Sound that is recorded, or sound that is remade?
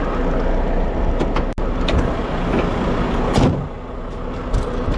recorded